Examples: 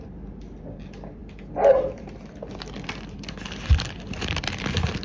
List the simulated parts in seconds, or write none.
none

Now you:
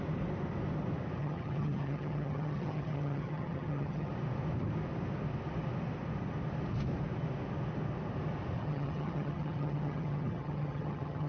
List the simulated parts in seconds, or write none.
1.2-4.1 (vocoder, HiFi-GAN); 8.6-11.3

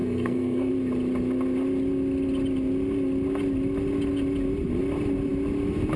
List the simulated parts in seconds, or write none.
0.0-0.7 (codec, SNAC)

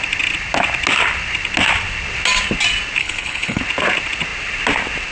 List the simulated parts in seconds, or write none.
3.0-3.6 (codec, HILCodec)

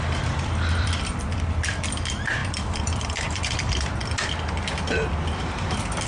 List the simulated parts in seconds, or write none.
0.0-4.0 (vocoder, BigVGAN v2); 5.4-6.1